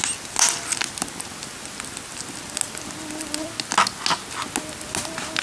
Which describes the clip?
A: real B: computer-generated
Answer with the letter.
A